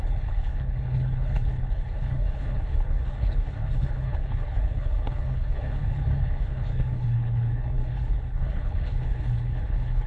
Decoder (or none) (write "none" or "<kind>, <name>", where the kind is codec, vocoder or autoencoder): codec, HILCodec